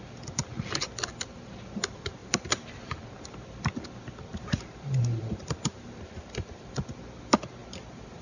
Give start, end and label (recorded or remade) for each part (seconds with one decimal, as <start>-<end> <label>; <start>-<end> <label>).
0.0-2.2 recorded; 2.2-3.2 remade; 3.2-4.3 recorded; 4.3-6.7 remade; 6.7-7.6 recorded; 7.6-8.2 remade